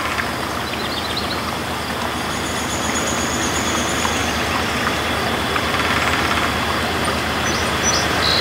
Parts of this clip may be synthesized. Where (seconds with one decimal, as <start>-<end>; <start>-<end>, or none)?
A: none